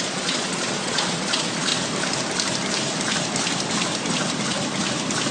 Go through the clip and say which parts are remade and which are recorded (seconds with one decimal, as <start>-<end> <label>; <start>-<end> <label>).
0.0-1.7 remade; 1.7-5.3 recorded

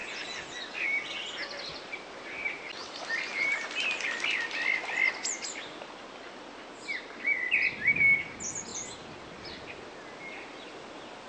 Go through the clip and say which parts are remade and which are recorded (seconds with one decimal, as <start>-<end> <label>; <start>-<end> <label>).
0.0-11.3 recorded

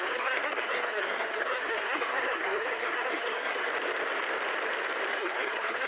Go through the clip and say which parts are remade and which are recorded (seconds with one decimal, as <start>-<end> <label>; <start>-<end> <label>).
0.0-3.7 remade; 3.7-5.1 recorded; 5.1-5.9 remade